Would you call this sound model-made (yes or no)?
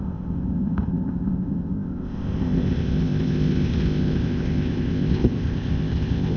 yes